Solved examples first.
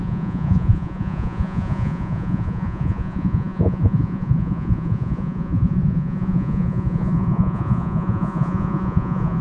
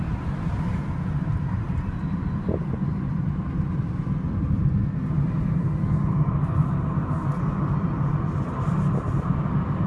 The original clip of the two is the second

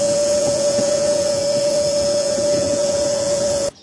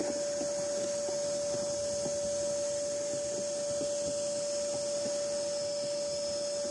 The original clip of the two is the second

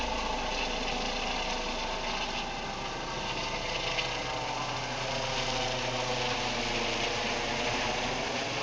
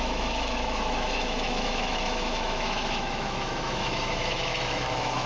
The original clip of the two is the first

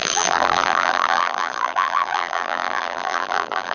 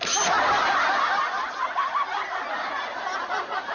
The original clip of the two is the second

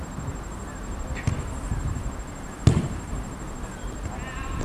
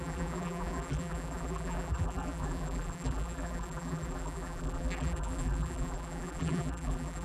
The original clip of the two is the first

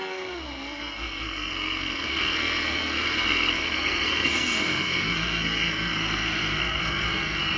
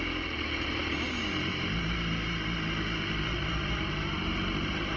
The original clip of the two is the second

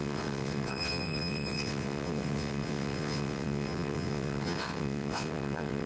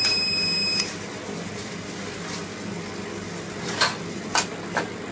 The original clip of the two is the second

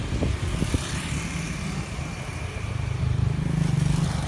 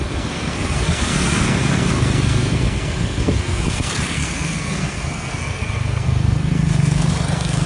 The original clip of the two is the first